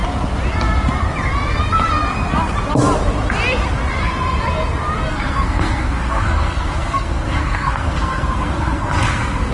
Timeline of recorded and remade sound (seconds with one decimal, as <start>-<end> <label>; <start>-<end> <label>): 0.0-5.1 recorded; 5.1-9.5 remade